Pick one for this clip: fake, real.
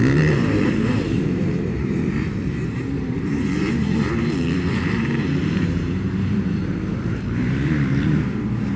fake